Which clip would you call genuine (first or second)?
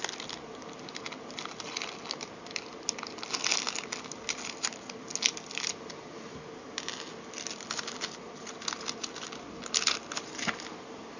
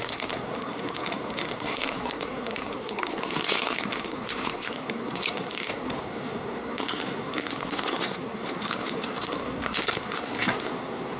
first